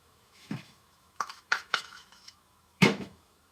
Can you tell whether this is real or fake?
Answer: fake